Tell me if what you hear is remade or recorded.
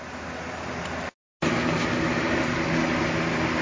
recorded